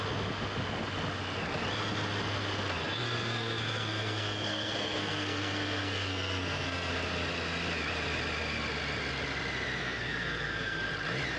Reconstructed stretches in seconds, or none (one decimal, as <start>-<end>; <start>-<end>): 2.8-6.9; 9.8-10.9